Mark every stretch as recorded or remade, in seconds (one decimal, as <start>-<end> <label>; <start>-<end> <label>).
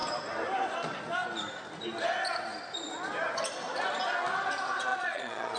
0.0-4.9 recorded; 4.9-5.6 remade